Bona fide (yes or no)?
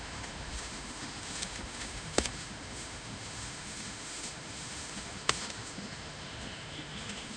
no